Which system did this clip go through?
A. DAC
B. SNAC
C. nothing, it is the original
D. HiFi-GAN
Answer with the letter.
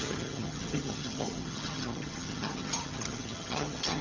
D